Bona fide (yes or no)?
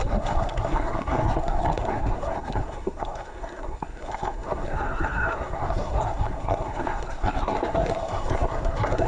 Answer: no